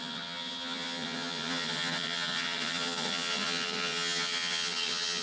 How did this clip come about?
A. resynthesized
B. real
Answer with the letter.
A